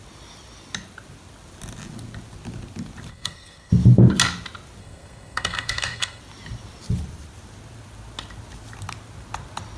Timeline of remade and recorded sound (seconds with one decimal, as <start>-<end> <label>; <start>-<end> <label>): 0.0-3.1 recorded; 3.1-3.7 remade; 3.7-4.8 recorded; 4.8-6.2 remade; 6.2-9.8 recorded